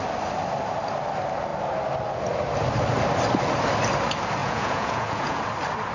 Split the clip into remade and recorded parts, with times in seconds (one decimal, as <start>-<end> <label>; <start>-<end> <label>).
0.0-4.4 recorded; 4.4-5.4 remade; 5.4-5.9 recorded